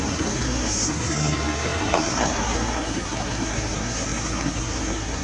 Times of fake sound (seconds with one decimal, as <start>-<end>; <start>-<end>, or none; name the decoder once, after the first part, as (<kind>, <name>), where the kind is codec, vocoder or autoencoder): 0.0-5.2 (codec, SNAC)